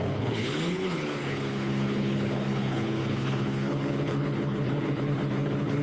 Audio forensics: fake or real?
fake